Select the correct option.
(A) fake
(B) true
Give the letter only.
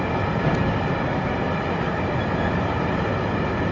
B